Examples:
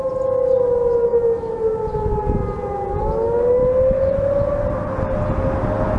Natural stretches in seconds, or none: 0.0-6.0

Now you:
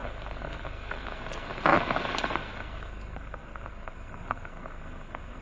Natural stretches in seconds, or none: none

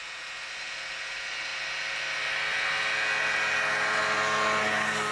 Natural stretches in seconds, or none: 0.0-5.1

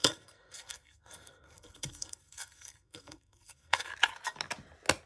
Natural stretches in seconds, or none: 3.9-5.1

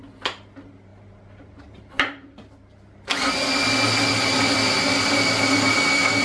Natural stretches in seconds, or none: 0.0-6.2